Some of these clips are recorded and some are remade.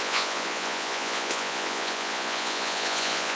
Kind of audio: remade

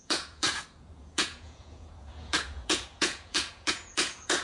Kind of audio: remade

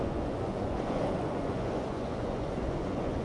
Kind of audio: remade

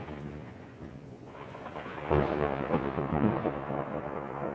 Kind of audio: remade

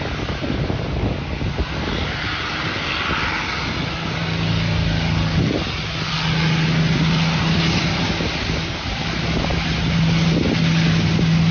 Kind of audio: recorded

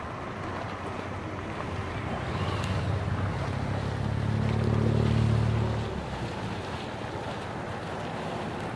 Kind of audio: recorded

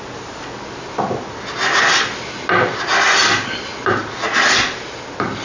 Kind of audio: recorded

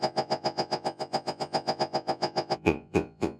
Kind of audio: remade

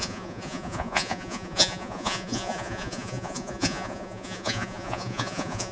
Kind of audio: remade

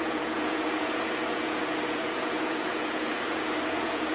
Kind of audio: remade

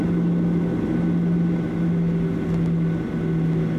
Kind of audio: recorded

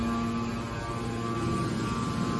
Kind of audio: recorded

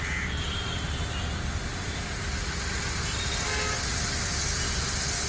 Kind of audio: recorded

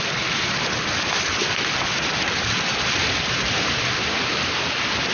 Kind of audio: recorded